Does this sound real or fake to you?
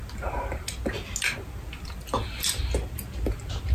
real